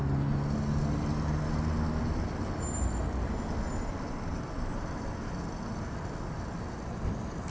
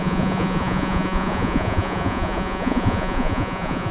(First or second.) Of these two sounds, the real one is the first